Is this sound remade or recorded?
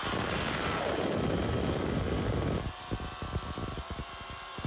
remade